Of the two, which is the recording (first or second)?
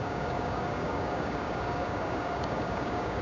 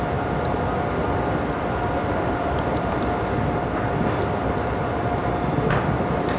second